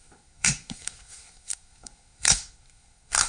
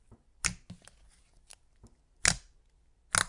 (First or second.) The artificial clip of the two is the first